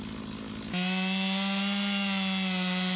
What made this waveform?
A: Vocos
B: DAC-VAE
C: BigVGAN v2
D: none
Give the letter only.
D